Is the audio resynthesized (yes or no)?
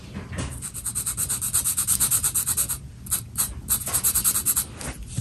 no